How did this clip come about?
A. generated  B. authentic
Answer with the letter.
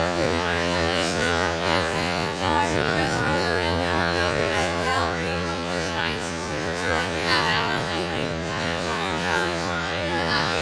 A